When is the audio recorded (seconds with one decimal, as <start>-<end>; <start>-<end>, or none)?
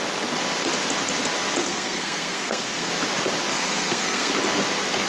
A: 0.0-1.6; 2.9-3.5; 4.3-5.1